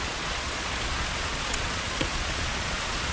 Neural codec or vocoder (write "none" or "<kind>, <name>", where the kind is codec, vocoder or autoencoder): vocoder, Vocos